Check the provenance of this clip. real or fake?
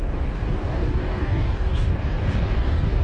fake